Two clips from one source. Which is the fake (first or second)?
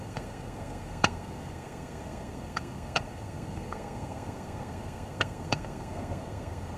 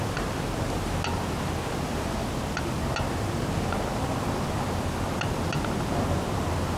first